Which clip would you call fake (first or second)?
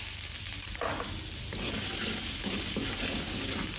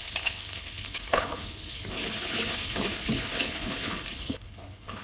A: second